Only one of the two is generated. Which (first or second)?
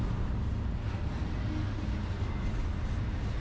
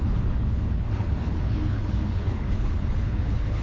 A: second